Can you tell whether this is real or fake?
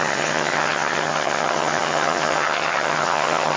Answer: fake